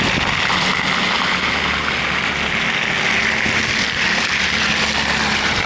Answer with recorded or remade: recorded